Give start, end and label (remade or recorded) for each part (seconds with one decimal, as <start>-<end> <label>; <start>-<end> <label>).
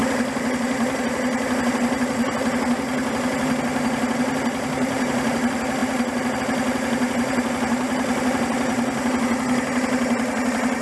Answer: 0.0-10.8 recorded